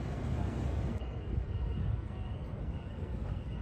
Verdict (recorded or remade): remade